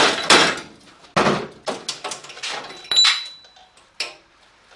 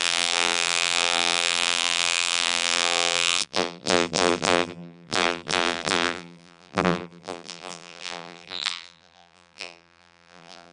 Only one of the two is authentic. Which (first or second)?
first